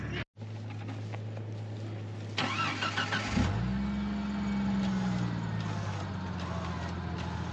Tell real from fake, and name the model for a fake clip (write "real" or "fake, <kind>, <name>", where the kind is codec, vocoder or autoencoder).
real